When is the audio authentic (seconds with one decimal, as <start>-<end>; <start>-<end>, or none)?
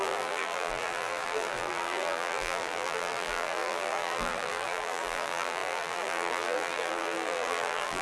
none